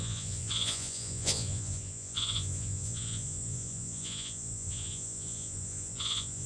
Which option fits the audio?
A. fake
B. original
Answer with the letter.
A